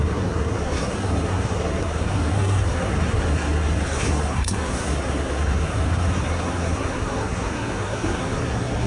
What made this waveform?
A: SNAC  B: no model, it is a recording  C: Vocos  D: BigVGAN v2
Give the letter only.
A